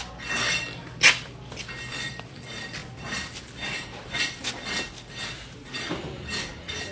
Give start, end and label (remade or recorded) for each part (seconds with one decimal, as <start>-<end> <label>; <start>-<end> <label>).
0.0-6.9 recorded